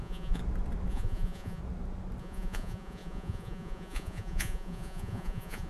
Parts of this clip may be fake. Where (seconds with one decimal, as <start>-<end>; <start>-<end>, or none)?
0.0-0.4; 0.9-1.6; 2.2-5.7